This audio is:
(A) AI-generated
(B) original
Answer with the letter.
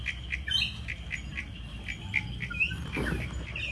B